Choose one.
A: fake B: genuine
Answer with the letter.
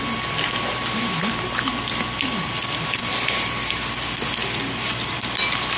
B